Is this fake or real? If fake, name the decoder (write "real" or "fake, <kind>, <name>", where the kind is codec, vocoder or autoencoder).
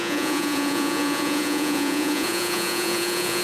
fake, vocoder, Vocos